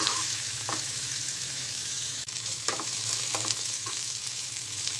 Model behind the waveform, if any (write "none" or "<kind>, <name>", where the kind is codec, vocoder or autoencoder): autoencoder, DAC-VAE